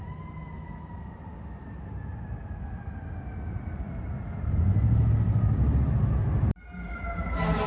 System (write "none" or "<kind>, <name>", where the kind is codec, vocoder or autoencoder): none